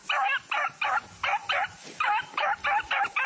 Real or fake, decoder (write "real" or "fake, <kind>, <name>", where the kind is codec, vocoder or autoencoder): real